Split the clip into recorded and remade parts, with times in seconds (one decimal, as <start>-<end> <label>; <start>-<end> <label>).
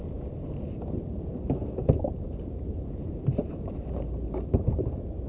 0.0-1.6 recorded; 1.6-4.8 remade; 4.8-5.3 recorded